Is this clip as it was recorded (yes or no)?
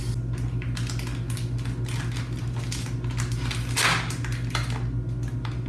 yes